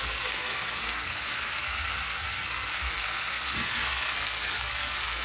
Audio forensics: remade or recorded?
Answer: remade